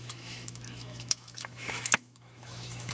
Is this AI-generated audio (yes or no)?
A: yes